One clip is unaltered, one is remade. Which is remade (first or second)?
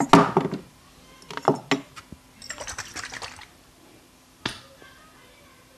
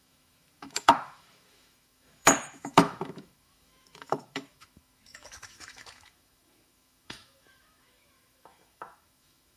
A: second